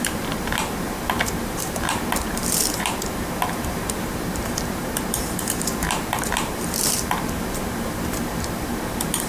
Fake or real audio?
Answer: fake